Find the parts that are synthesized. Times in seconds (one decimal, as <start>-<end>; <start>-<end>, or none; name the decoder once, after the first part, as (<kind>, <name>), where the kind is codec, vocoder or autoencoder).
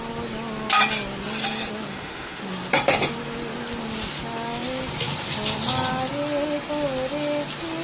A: 1.9-2.4 (autoencoder, DAC-VAE)